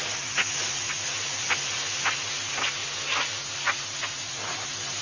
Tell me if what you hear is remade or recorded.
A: recorded